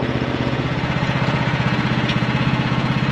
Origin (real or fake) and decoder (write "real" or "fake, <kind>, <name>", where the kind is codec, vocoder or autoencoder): fake, vocoder, Vocos